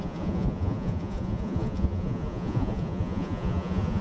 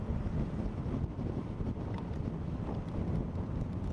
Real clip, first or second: second